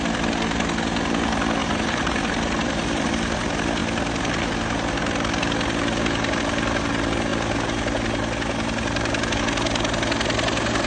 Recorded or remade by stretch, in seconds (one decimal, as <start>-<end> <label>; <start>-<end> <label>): 0.0-1.6 recorded; 1.6-3.1 remade; 3.1-10.9 recorded